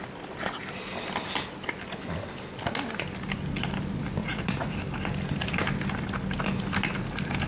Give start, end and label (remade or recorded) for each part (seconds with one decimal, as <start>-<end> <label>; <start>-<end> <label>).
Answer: 0.0-4.2 recorded; 4.2-4.7 remade; 4.7-7.5 recorded